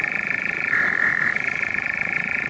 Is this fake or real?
fake